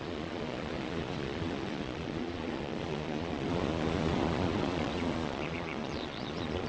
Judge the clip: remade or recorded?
remade